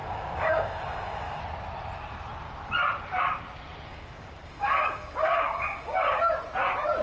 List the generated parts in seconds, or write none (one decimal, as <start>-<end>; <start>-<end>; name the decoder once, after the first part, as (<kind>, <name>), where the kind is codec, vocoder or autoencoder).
0.0-1.4 (codec, DAC); 3.9-6.2